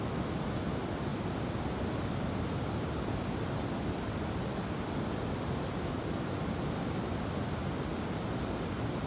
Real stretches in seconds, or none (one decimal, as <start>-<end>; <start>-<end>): 0.0-9.1